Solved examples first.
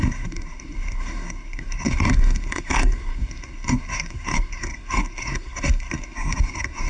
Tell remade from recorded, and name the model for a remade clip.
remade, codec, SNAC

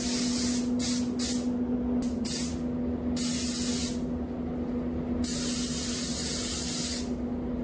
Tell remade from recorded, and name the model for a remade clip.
recorded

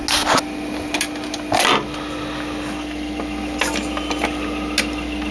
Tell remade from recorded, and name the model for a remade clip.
recorded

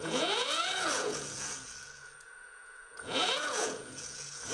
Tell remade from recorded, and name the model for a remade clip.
remade, vocoder, Vocos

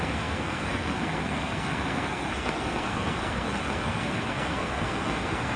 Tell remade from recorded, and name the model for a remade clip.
remade, codec, SNAC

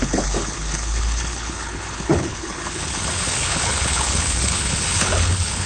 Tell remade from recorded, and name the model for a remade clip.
remade, codec, HILCodec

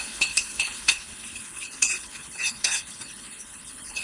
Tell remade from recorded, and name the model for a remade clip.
remade, codec, HILCodec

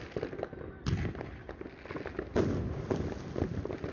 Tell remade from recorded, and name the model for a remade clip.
recorded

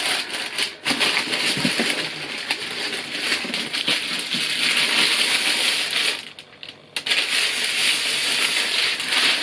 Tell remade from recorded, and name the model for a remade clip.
recorded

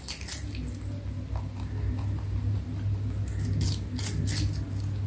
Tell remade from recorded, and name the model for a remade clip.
recorded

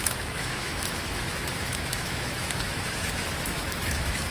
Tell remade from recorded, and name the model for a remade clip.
remade, autoencoder, DAC-VAE